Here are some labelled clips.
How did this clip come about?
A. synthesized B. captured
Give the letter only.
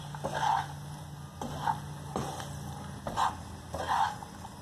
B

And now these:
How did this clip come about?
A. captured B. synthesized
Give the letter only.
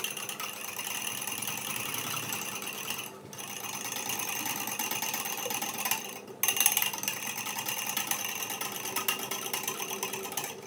A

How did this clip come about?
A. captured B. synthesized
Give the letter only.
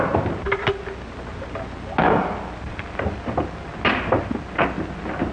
A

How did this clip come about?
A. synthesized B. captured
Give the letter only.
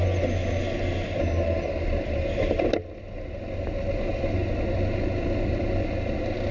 B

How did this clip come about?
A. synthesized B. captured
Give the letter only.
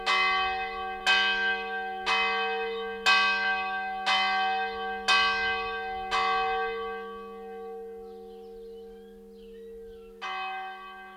B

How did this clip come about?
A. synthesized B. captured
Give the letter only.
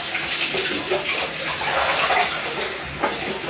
B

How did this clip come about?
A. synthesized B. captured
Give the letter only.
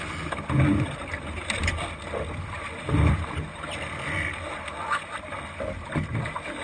B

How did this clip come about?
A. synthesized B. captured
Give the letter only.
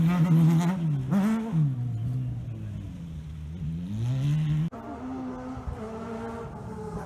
B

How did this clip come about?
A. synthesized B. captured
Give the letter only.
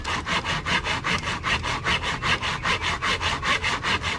B